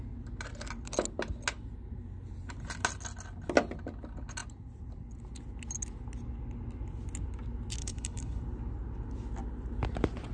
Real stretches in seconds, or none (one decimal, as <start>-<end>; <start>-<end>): 0.0-7.8; 8.4-10.3